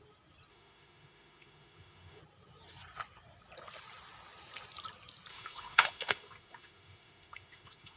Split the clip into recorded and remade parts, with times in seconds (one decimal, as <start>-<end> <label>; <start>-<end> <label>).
0.0-0.5 recorded; 0.5-2.2 remade; 2.2-5.3 recorded; 5.3-8.0 remade